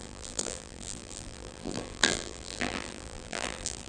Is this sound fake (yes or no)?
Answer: yes